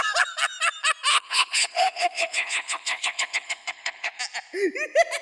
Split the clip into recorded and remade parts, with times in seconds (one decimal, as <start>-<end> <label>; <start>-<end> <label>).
0.0-1.1 recorded; 1.1-4.2 remade; 4.2-5.2 recorded